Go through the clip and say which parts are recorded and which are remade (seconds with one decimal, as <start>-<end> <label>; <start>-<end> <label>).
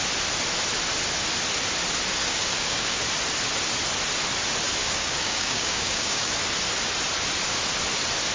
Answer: 0.0-2.2 recorded; 2.2-3.0 remade; 3.0-4.8 recorded; 4.8-6.3 remade; 6.3-8.3 recorded